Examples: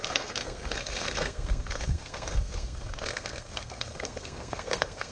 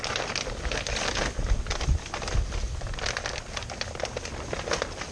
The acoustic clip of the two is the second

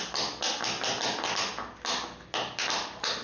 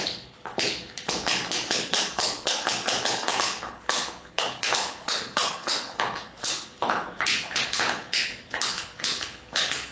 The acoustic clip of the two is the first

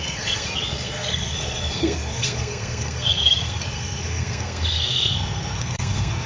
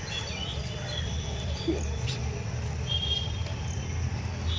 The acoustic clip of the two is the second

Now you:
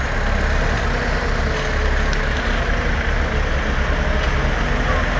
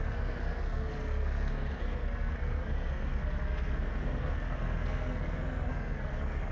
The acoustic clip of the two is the first